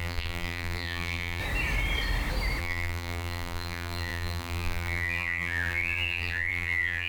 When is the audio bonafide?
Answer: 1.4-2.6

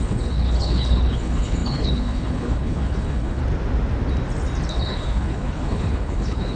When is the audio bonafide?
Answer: 3.4-4.7

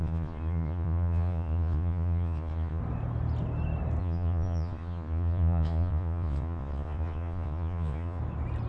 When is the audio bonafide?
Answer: 2.8-4.0; 8.2-8.7

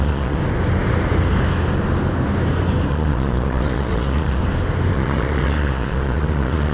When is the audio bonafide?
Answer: 0.4-2.9; 4.4-4.9

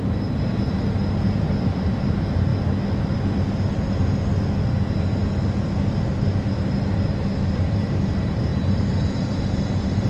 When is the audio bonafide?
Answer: 2.5-7.5

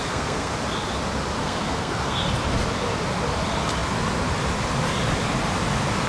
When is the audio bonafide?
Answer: 0.5-1.4; 2.2-6.1

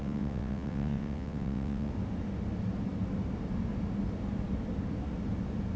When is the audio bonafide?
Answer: 1.9-5.8